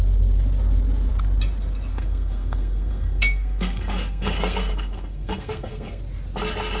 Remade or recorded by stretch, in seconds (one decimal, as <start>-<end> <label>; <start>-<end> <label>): 0.0-1.9 recorded; 1.9-6.0 remade; 6.0-6.8 recorded